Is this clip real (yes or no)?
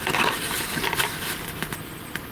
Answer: yes